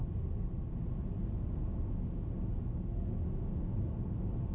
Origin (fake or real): real